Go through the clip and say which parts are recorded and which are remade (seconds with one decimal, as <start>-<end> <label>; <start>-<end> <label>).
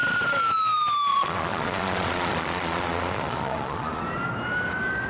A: 0.0-1.1 recorded; 1.1-4.0 remade; 4.0-5.1 recorded